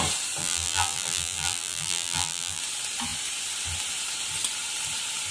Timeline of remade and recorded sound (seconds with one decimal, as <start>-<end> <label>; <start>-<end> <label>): 0.0-0.4 recorded; 0.4-2.6 remade; 2.6-5.3 recorded